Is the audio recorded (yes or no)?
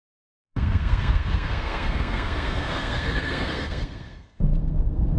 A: no